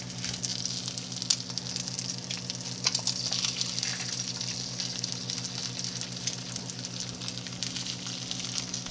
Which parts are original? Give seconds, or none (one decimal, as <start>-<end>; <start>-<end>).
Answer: 0.0-8.9